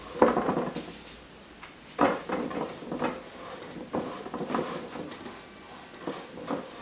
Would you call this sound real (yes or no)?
yes